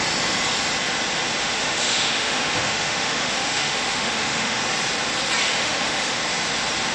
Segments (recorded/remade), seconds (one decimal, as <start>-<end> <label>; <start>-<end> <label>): 0.0-1.4 recorded; 1.4-4.6 remade; 4.6-5.4 recorded; 5.4-6.2 remade; 6.2-6.9 recorded